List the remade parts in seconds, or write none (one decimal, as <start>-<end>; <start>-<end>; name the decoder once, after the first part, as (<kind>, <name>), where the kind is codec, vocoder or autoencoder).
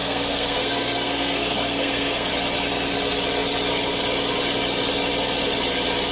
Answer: 0.0-2.3 (codec, SNAC)